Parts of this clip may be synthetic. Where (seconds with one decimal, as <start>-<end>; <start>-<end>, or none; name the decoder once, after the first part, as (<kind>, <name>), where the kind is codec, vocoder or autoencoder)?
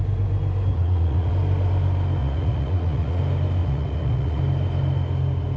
0.7-1.3 (vocoder, Vocos); 2.2-3.2; 3.6-4.4